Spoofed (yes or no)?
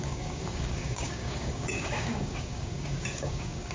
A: yes